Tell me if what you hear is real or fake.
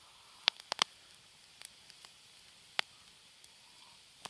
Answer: real